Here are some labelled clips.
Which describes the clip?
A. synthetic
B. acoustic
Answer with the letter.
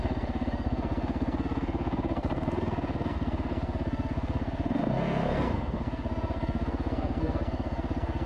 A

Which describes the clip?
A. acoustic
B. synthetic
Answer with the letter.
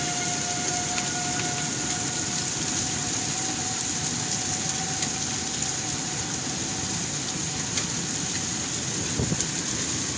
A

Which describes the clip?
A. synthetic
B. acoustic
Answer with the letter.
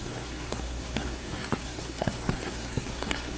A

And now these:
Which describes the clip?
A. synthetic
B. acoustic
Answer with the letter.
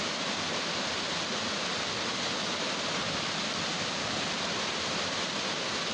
B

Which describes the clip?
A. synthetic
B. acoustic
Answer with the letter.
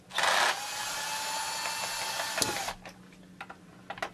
B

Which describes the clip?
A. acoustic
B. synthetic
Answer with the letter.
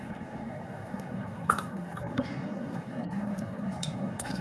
B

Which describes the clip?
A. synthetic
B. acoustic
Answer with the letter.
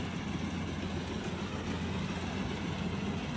B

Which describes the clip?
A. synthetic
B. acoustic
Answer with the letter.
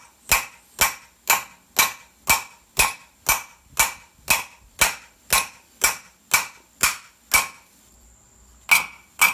B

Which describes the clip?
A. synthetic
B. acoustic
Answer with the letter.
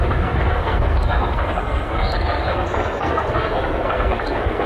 A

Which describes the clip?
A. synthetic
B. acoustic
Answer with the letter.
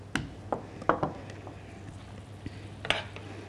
B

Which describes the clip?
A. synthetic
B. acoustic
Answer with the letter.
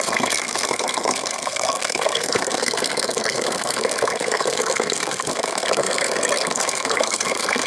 A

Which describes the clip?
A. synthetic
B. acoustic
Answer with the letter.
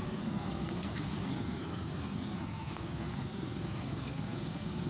A